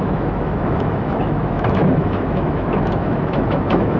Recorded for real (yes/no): no